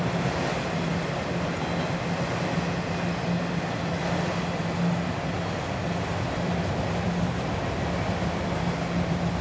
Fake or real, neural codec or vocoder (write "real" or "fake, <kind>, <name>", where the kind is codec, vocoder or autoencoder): real